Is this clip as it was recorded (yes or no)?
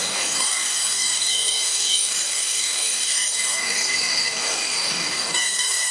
no